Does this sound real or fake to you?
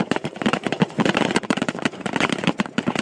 fake